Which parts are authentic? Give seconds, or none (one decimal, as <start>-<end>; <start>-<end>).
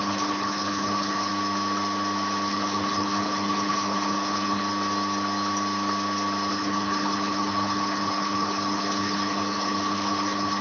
1.3-2.5; 4.6-6.5